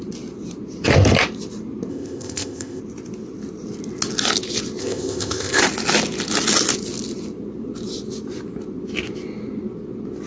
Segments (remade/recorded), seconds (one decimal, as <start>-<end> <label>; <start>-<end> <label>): 0.0-1.9 recorded; 1.9-2.8 remade; 2.8-4.8 recorded; 4.8-5.6 remade; 5.6-10.3 recorded